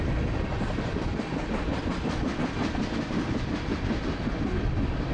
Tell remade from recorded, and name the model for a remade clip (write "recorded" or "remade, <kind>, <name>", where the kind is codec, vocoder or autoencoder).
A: recorded